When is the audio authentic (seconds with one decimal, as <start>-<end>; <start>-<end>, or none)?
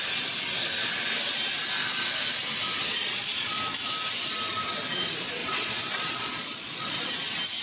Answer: 0.0-3.0; 3.6-5.4; 7.1-7.6